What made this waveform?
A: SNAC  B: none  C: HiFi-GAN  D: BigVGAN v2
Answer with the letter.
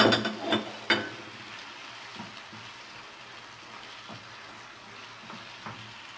B